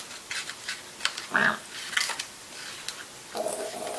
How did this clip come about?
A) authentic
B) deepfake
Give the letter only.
A